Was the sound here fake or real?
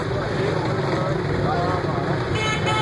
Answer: real